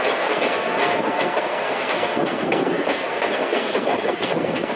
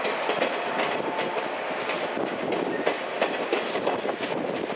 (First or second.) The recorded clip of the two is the second